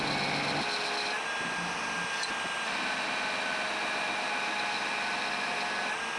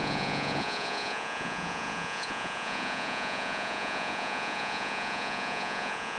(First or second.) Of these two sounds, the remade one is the second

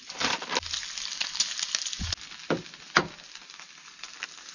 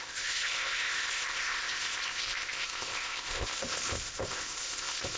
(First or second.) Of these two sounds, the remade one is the second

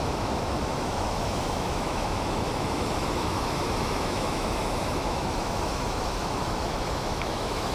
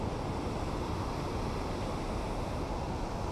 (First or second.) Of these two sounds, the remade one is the first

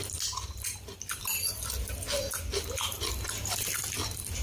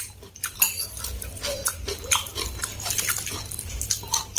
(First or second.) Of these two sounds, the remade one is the first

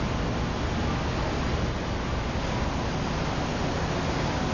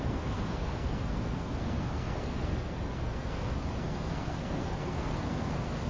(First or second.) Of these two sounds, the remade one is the second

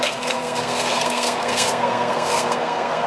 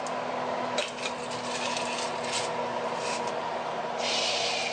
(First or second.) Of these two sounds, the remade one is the first